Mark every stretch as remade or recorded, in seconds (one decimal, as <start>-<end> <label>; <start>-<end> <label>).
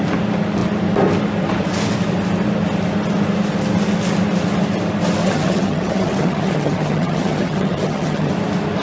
0.0-5.2 recorded; 5.2-8.3 remade; 8.3-8.8 recorded